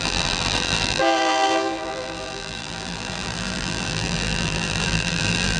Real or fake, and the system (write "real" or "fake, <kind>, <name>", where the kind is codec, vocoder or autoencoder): fake, vocoder, BigVGAN v2